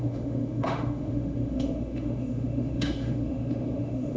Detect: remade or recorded remade